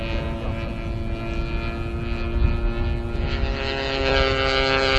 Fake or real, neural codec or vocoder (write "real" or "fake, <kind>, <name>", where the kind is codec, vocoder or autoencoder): real